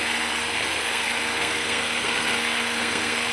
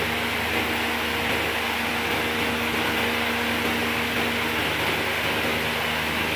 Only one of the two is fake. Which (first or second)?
first